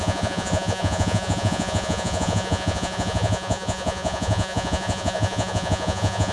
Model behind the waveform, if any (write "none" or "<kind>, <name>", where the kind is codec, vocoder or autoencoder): vocoder, Vocos